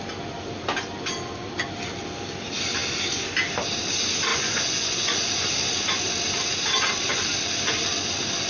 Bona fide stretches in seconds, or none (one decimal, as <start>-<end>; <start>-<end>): 0.0-4.3; 5.5-8.5